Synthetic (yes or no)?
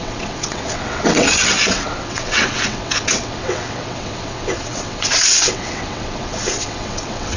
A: yes